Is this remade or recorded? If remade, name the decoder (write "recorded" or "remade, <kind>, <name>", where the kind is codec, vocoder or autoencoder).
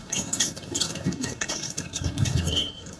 remade, codec, SNAC